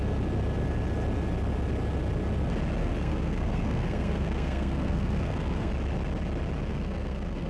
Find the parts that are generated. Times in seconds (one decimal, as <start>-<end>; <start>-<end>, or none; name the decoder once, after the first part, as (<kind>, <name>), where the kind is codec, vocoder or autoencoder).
2.8-5.7 (codec, SNAC); 6.7-7.5